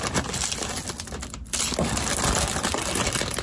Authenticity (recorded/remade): recorded